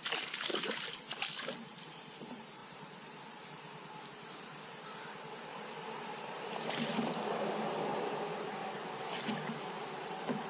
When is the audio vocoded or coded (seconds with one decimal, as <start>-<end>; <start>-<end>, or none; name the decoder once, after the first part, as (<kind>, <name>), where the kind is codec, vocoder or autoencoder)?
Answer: 0.0-0.5 (vocoder, BigVGAN v2); 1.4-2.6; 4.1-7.9; 9.0-10.5